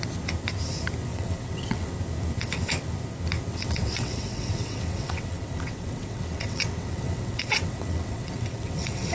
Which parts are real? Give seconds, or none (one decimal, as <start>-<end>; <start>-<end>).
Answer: 0.0-1.1; 1.9-3.5